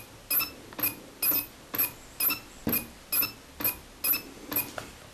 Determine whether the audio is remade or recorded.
recorded